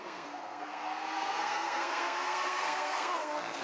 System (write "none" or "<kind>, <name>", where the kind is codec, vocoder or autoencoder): codec, SNAC